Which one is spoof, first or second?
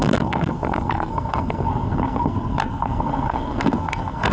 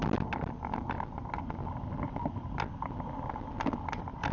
first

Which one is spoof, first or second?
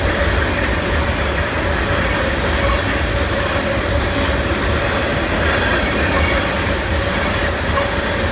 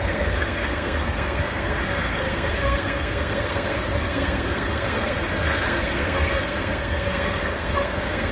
second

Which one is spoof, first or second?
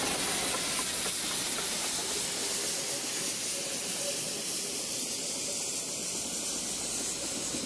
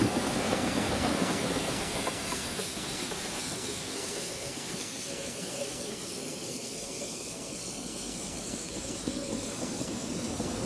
second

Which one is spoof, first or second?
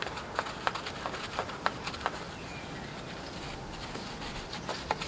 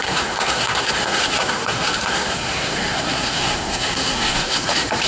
second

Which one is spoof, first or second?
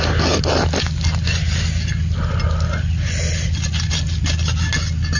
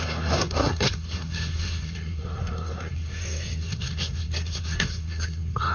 second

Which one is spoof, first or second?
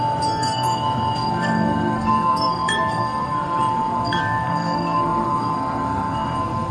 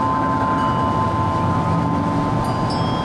first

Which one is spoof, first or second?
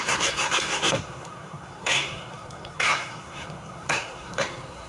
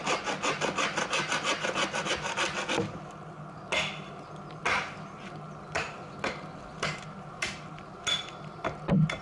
first